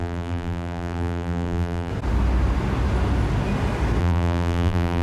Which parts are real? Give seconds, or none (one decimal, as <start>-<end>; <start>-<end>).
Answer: 1.9-4.0